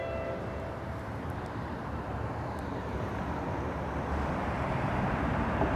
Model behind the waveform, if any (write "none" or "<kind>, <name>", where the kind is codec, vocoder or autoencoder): vocoder, BigVGAN v2